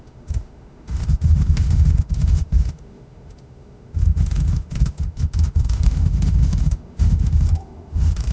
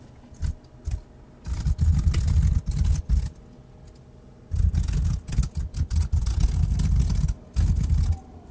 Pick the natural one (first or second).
second